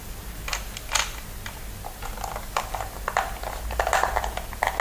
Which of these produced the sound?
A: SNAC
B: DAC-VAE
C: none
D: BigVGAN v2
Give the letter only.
C